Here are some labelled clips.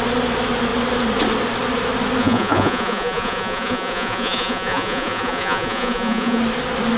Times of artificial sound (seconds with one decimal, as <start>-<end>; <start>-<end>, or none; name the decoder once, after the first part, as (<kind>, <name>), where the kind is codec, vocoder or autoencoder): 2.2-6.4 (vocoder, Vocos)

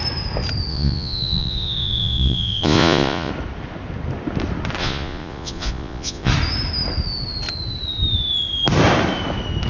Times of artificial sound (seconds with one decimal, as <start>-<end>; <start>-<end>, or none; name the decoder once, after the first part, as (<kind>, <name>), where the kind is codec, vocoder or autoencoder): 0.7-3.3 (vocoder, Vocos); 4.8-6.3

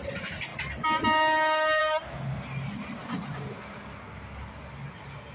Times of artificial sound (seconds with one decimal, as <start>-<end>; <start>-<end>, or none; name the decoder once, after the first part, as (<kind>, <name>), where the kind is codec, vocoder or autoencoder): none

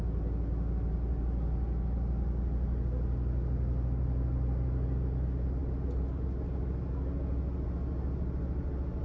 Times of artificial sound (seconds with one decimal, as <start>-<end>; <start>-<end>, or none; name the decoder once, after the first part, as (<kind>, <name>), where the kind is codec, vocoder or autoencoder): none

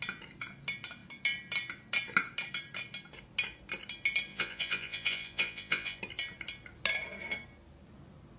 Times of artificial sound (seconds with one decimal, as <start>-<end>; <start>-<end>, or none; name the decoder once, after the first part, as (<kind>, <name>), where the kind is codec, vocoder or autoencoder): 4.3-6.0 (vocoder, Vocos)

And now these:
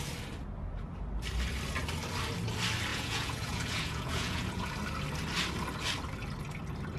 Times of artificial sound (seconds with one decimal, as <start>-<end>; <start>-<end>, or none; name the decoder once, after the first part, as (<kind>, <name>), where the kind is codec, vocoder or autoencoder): 2.9-4.7 (vocoder, Vocos)

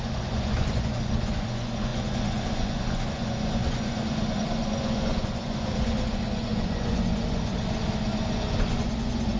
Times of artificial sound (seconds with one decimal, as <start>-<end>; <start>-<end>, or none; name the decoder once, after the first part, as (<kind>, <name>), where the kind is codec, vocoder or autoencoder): 0.0-9.4 (vocoder, Vocos)

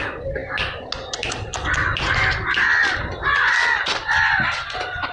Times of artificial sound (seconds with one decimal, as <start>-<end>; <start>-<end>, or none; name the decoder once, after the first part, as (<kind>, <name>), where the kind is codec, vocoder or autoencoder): none